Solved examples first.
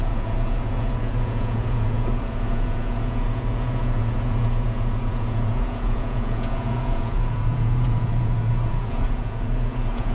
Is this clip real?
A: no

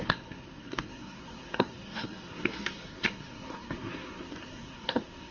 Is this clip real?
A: no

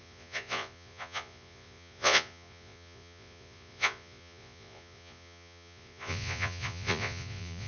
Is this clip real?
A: no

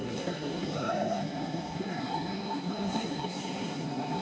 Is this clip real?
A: no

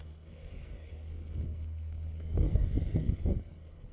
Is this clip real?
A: no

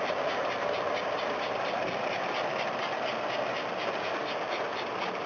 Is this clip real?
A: yes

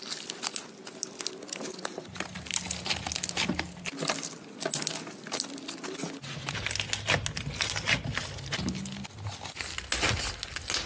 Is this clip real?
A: yes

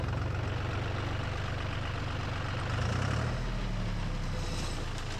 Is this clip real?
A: yes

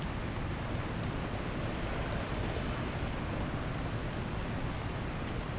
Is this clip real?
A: yes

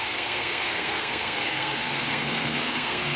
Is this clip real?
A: no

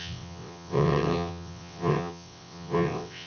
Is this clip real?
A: no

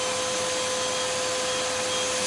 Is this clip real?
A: yes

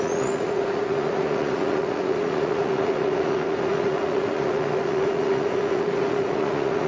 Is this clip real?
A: no